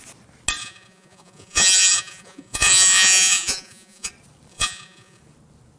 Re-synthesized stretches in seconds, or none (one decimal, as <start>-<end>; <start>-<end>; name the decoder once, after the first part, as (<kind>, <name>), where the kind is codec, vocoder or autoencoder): 0.6-4.1 (vocoder, Vocos); 4.5-5.2